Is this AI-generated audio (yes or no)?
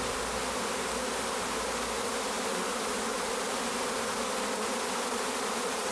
no